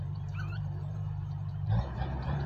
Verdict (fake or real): fake